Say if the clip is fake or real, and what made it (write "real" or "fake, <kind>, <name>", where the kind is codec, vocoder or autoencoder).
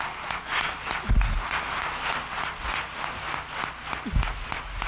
real